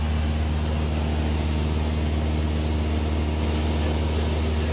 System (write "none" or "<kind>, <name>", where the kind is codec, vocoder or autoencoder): none